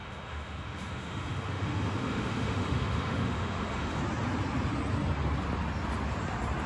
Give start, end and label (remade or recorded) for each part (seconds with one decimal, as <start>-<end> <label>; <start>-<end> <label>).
0.0-4.0 remade; 4.0-6.7 recorded